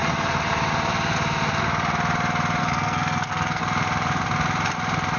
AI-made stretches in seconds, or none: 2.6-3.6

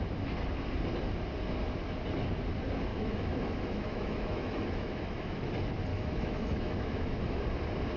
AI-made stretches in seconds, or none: 2.9-5.4; 5.9-7.4